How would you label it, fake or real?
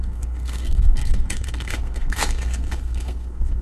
fake